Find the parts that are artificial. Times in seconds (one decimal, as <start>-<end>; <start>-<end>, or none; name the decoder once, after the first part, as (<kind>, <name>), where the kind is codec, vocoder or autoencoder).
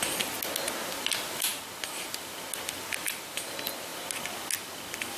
none